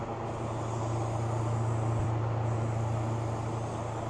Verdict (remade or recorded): recorded